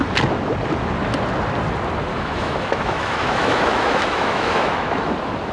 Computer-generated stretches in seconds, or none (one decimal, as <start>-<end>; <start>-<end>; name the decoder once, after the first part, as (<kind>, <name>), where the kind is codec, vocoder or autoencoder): 2.1-5.1 (autoencoder, DAC-VAE)

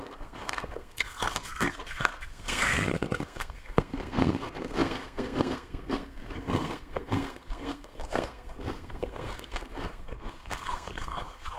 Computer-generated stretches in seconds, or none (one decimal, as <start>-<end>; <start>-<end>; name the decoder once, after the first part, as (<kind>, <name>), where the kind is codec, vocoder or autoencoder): 0.0-11.6 (codec, SNAC)

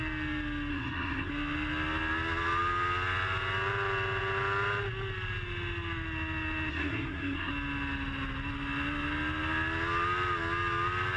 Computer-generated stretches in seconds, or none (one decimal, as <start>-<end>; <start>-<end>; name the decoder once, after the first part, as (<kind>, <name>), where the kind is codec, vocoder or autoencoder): 0.7-1.3 (codec, SNAC); 6.7-7.5

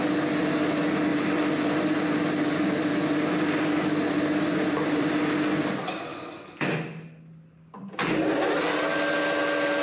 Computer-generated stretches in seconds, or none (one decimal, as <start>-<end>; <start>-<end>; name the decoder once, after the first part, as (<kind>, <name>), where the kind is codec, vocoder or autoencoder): 1.1-5.1 (vocoder, BigVGAN v2); 6.1-6.7